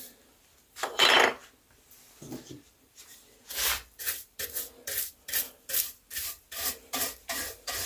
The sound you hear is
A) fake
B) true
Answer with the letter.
A